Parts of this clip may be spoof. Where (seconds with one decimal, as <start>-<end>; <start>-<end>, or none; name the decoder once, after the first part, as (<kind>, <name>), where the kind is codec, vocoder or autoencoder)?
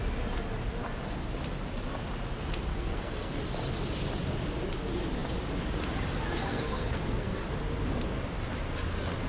2.7-3.3 (codec, SNAC); 6.5-7.5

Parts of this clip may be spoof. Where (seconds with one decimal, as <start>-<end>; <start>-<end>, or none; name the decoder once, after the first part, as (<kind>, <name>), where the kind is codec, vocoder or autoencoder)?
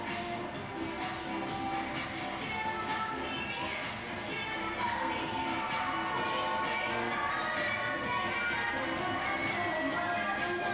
4.6-5.1 (codec, SNAC)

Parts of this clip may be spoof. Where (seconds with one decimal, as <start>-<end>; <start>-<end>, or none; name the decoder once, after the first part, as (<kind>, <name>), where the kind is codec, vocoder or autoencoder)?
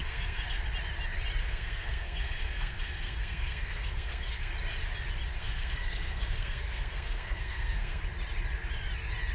0.0-0.6 (codec, SNAC); 1.4-4.5; 5.4-8.0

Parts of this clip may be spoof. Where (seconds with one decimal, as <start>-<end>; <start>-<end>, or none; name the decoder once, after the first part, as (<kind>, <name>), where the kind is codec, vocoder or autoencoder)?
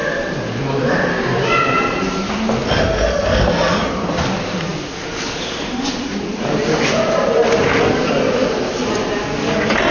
none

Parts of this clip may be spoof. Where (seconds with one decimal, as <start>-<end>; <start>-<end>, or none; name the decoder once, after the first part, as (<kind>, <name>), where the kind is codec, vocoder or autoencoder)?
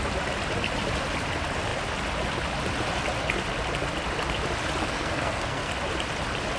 4.8-5.7 (codec, SNAC)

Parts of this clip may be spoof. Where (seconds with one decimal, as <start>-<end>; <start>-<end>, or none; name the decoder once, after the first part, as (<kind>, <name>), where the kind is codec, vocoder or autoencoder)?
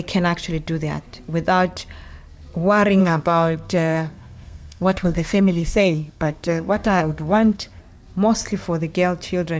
3.0-7.8 (codec, SNAC)